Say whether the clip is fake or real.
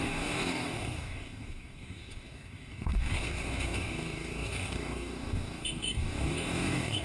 fake